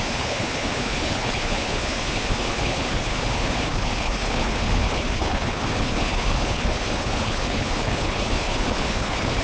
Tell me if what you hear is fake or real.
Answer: fake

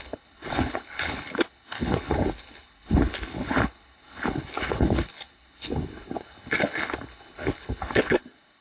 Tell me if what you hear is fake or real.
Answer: fake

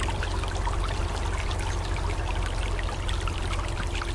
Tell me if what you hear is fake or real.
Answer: real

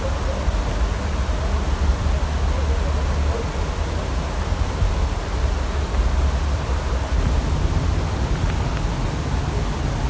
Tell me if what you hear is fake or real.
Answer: real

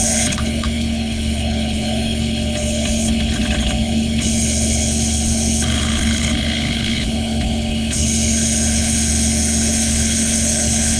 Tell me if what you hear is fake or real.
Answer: fake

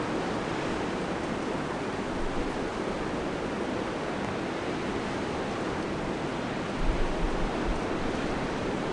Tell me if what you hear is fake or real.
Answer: real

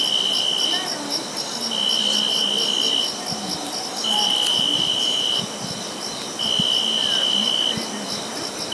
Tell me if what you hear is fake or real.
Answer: real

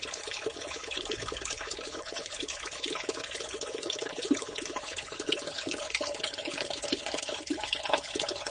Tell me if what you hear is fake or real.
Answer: fake